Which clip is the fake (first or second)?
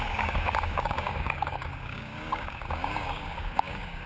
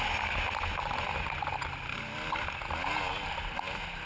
first